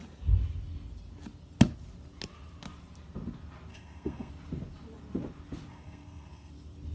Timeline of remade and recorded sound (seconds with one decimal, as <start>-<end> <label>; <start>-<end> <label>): 0.0-3.7 recorded; 3.7-4.3 remade; 4.3-5.7 recorded; 5.7-6.5 remade; 6.5-6.9 recorded